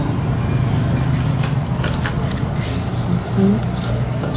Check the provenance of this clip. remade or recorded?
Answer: recorded